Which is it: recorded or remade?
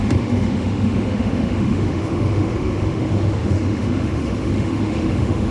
remade